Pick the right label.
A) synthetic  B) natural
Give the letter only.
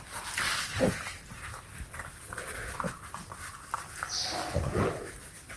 B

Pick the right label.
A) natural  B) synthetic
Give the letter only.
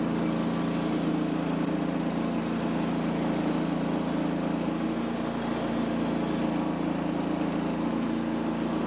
A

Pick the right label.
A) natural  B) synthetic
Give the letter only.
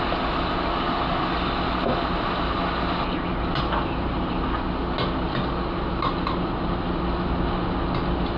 A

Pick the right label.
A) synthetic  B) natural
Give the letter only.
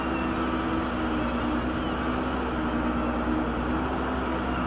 B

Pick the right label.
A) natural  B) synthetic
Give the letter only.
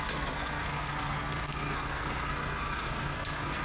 B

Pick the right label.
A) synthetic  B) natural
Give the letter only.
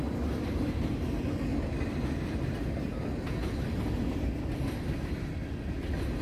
B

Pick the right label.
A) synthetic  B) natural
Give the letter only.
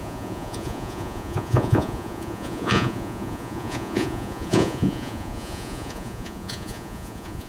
A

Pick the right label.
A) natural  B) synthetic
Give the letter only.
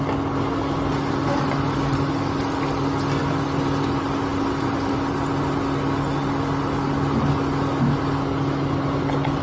A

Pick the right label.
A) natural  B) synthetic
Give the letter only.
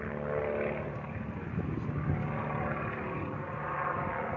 A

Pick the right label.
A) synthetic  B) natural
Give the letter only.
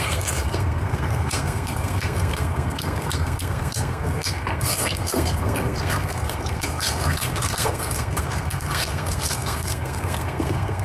A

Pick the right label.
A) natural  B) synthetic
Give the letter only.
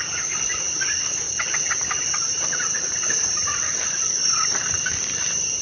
B